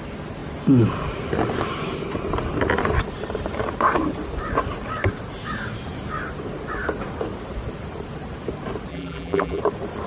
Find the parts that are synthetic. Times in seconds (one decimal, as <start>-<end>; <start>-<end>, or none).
8.9-9.6